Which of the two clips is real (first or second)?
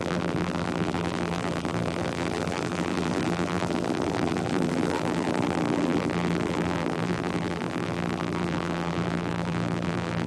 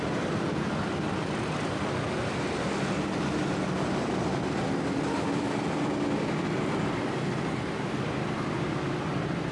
second